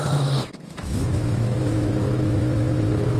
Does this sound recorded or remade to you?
remade